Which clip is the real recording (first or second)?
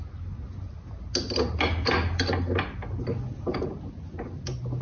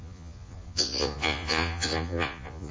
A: first